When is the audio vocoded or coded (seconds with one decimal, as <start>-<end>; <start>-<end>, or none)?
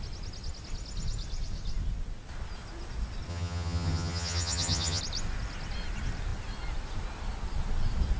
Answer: 3.3-5.0